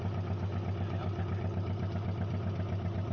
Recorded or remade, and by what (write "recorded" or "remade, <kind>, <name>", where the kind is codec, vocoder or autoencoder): recorded